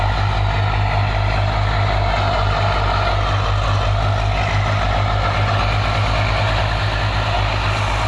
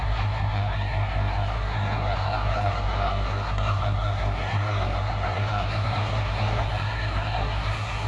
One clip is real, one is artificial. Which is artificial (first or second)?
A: second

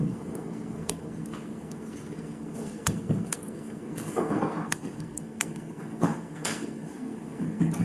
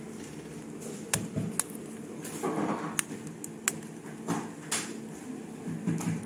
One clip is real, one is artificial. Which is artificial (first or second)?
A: first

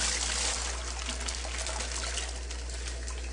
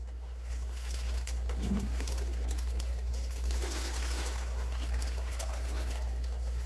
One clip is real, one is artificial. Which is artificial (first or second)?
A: second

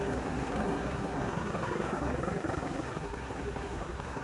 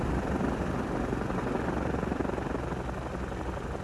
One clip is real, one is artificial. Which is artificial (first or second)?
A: first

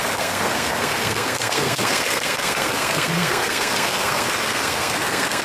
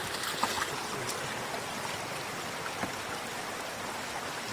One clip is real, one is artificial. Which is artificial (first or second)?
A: first